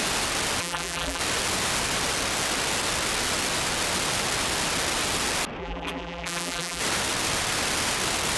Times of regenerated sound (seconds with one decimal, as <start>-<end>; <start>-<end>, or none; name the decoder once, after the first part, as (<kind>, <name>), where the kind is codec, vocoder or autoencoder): 0.6-1.2 (vocoder, BigVGAN v2); 5.6-6.8